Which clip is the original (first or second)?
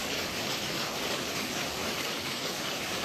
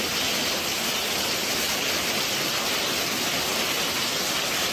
second